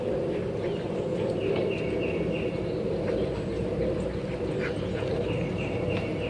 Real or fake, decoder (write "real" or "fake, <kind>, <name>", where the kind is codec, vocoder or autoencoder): real